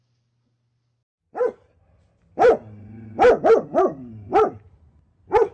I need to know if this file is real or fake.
fake